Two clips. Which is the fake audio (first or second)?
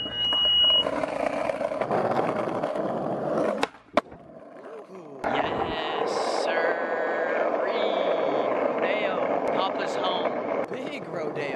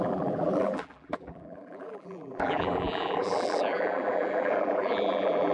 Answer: second